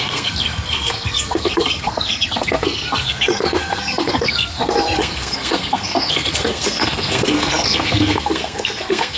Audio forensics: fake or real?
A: fake